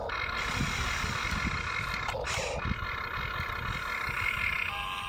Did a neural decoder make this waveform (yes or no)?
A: no